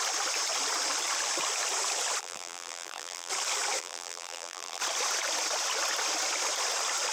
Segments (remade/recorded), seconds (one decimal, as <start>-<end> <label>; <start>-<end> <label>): 0.0-2.2 recorded; 2.2-3.3 remade; 3.3-3.8 recorded; 3.8-4.8 remade; 4.8-7.1 recorded